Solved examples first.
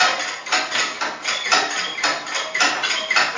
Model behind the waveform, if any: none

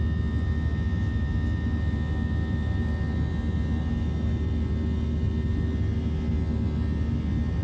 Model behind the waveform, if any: none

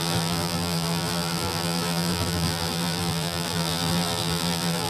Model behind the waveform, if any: vocoder, BigVGAN v2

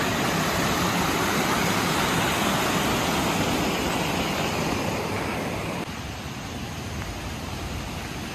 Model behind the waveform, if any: none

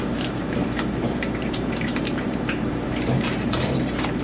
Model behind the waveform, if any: vocoder, BigVGAN v2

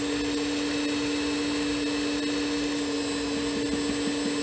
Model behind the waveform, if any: none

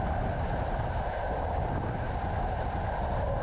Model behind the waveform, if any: none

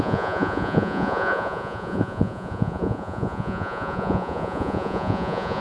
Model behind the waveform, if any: vocoder, Vocos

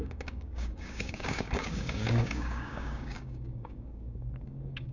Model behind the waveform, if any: codec, DAC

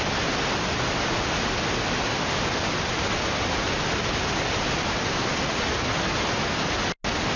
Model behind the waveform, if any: none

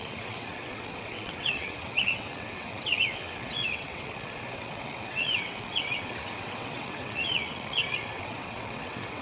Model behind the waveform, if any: vocoder, WaveNeXt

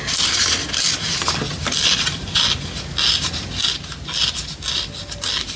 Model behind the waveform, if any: none